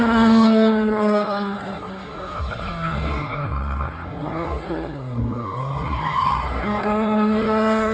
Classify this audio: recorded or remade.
remade